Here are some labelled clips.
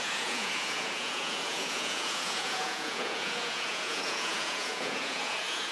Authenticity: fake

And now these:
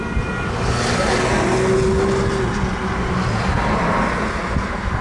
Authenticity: real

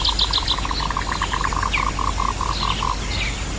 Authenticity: real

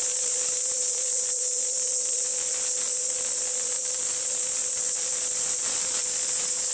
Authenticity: fake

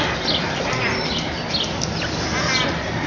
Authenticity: real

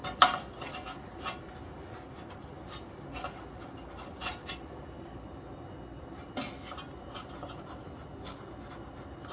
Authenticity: real